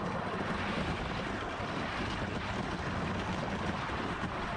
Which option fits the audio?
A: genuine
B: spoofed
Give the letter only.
A